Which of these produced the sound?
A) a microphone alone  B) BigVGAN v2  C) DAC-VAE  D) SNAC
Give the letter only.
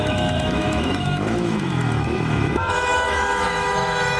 C